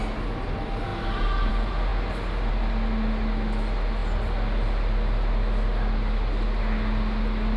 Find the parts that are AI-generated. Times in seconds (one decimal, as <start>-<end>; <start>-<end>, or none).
none